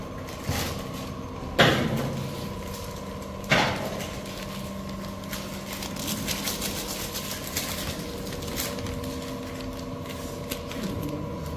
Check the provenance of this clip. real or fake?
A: real